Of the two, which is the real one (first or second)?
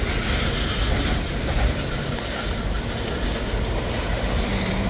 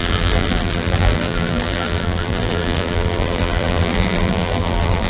first